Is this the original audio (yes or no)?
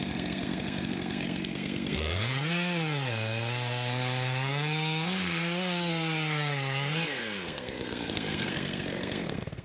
no